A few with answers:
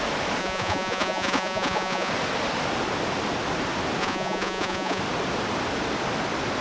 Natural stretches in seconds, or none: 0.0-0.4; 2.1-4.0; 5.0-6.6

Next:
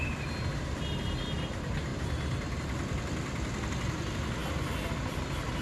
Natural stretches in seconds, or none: 0.0-5.6

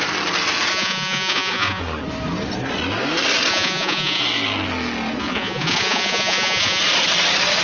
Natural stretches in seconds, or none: 0.0-0.7; 1.8-3.5; 4.2-5.2; 6.8-7.6

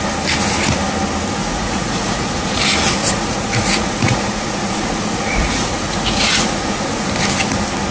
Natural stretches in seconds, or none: 0.0-1.4; 2.6-3.0; 7.1-7.9

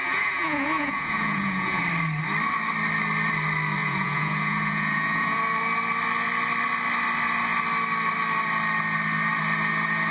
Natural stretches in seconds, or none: 1.8-3.8; 5.4-10.1

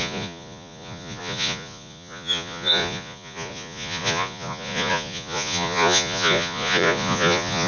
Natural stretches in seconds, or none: none